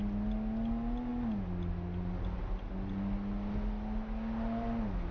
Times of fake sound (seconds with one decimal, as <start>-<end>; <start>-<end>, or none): none